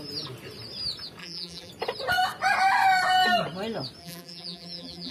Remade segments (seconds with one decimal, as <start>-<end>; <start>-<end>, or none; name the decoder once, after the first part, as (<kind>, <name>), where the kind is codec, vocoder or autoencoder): 1.2-1.7 (vocoder, BigVGAN v2); 4.0-5.1